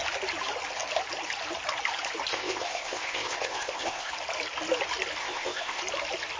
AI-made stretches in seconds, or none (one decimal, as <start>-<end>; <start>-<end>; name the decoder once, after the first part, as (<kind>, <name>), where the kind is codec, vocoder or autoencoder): 2.3-4.1 (codec, ZipCodec); 5.2-5.8